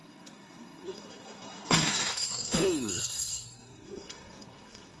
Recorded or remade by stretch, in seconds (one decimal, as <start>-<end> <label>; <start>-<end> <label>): 0.0-5.0 remade